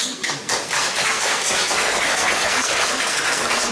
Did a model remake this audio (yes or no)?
yes